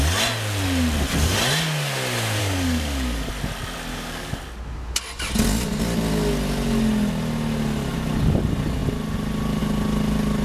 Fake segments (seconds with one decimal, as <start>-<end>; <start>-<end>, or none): 2.4-3.3; 3.9-4.4